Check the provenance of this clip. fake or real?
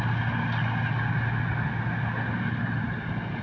real